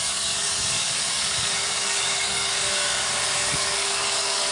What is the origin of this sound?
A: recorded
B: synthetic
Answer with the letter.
B